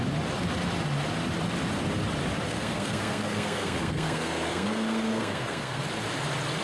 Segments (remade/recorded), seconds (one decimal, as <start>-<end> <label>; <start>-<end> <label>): 0.0-2.5 recorded; 2.5-5.8 remade; 5.8-6.6 recorded